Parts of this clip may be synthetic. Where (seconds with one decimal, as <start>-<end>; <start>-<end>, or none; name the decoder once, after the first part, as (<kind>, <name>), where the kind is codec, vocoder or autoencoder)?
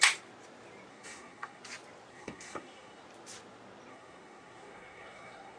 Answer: 0.9-1.6 (codec, SNAC); 2.1-3.0; 3.9-5.6